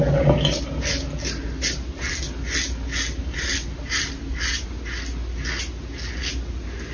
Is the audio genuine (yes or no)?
yes